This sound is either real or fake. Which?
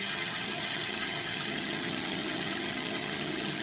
fake